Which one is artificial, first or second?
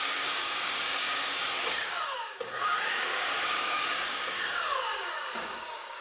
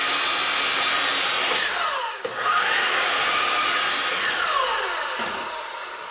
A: first